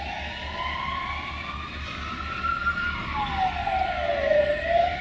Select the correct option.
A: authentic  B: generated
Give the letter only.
A